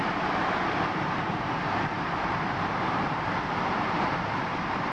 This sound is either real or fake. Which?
fake